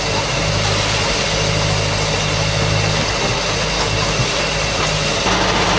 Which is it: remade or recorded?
recorded